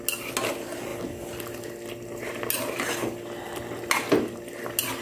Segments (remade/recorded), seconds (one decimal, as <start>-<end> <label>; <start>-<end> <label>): 0.0-5.0 recorded